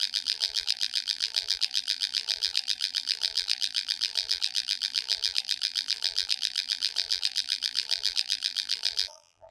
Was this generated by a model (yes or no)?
yes